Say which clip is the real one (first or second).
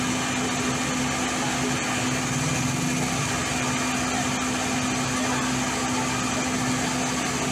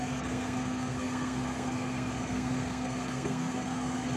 first